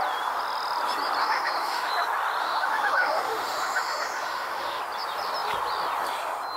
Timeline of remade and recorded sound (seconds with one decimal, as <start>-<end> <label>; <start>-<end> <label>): 0.0-1.2 recorded; 1.2-1.9 remade; 1.9-2.4 recorded; 2.4-4.8 remade; 4.8-6.6 recorded